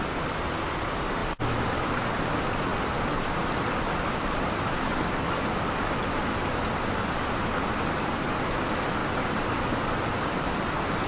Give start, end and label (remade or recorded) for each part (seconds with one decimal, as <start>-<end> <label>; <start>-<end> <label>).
0.0-2.7 recorded; 2.7-4.9 remade; 4.9-11.1 recorded